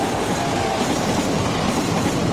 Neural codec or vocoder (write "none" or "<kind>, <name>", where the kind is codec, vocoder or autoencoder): none